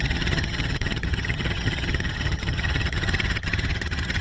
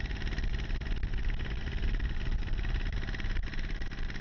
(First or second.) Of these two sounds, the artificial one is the first